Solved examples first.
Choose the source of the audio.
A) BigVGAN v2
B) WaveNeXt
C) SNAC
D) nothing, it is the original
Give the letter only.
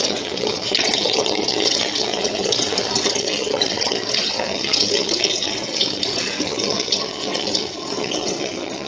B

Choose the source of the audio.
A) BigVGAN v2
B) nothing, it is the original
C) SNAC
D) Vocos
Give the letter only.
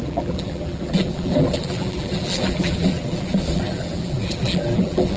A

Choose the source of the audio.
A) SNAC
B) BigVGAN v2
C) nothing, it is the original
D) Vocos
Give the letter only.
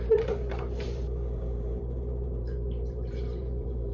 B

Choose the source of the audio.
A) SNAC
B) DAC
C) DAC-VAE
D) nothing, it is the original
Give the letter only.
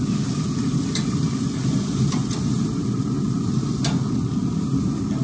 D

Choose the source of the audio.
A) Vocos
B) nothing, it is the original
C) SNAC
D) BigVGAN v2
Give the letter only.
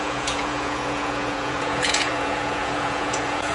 A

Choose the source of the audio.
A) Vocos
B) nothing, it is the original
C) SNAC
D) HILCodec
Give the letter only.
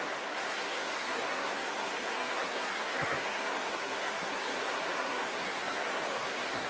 C